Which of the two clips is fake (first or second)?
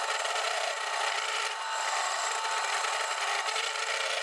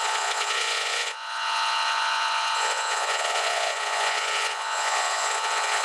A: second